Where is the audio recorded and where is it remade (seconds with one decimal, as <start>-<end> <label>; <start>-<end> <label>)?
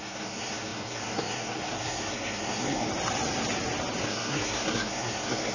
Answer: 0.0-2.9 remade; 2.9-4.0 recorded; 4.0-5.5 remade